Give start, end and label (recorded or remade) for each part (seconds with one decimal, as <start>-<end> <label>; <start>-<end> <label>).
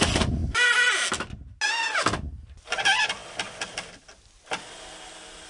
0.0-5.5 recorded